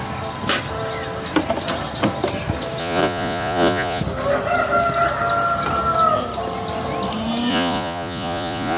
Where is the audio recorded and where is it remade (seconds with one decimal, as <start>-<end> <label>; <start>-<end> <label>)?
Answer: 0.0-2.8 recorded; 2.8-4.0 remade; 4.0-7.5 recorded; 7.5-8.8 remade